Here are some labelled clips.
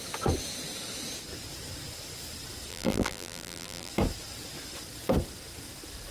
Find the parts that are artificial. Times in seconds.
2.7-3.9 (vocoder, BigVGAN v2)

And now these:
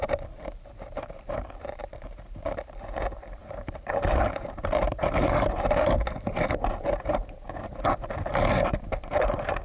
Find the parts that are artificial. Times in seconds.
0.0-9.6 (vocoder, BigVGAN v2)